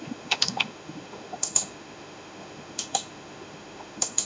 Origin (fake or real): fake